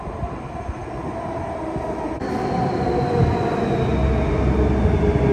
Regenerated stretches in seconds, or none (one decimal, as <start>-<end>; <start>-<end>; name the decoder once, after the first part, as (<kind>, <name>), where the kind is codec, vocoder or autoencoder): none